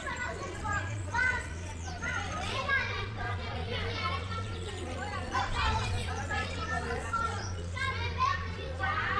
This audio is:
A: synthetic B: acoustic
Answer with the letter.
A